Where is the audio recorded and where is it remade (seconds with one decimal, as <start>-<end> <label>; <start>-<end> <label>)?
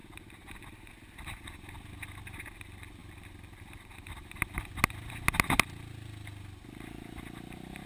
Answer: 0.0-7.9 recorded